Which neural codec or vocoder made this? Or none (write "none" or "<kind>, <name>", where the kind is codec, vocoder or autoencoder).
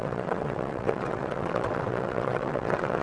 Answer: vocoder, WaveNeXt